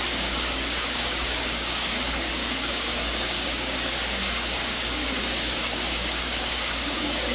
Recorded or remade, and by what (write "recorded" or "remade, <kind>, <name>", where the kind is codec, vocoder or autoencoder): remade, codec, DAC